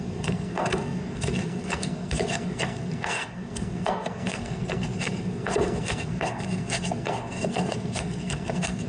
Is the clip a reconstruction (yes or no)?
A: yes